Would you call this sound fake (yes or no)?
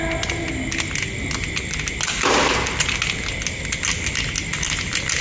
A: no